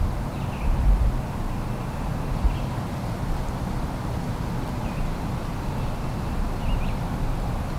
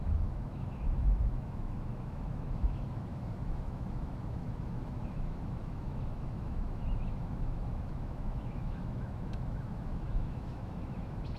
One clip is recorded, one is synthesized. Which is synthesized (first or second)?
second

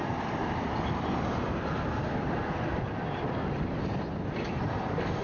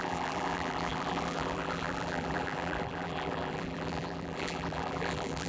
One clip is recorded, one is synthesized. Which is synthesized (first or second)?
second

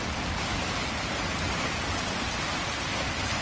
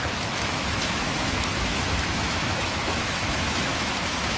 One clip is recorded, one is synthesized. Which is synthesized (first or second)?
second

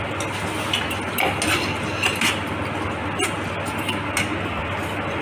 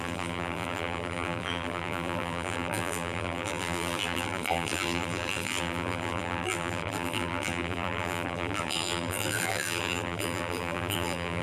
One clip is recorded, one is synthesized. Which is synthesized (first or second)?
second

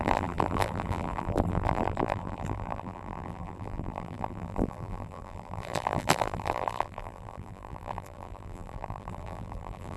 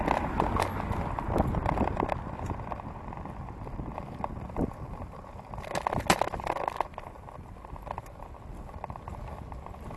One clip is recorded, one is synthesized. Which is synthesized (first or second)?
first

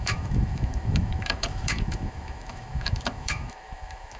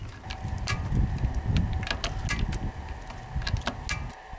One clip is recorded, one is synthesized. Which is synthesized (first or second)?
first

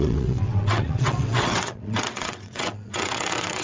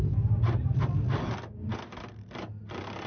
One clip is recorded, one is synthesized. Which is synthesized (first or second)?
first